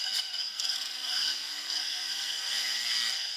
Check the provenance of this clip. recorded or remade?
remade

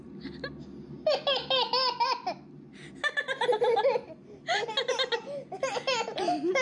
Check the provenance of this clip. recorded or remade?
recorded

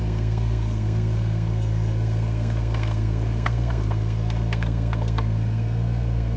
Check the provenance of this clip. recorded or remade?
remade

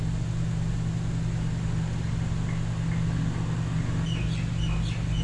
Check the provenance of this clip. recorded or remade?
recorded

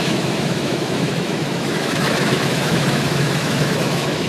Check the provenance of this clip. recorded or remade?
remade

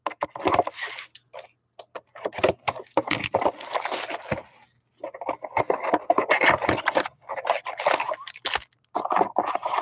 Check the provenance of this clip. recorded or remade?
recorded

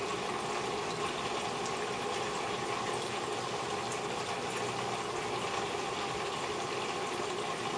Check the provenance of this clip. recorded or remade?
recorded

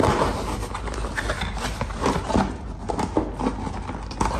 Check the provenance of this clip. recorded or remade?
recorded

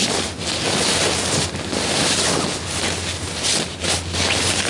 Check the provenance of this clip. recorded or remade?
recorded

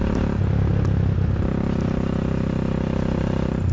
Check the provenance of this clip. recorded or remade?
recorded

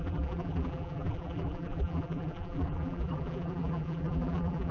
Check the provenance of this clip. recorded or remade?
remade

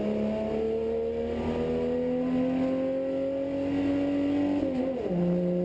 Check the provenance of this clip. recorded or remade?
recorded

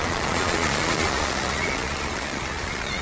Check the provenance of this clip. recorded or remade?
remade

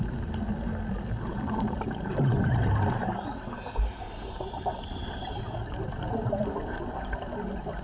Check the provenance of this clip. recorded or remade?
recorded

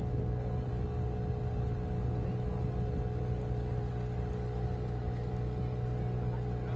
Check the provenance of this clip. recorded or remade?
recorded